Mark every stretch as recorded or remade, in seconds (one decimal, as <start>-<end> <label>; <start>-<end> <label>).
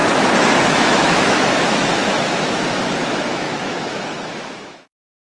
0.0-0.6 recorded; 0.6-5.2 remade